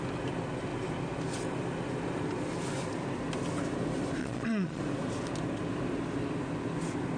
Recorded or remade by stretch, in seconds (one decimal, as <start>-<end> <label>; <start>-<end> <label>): 0.0-4.2 recorded; 4.2-4.8 remade; 4.8-7.2 recorded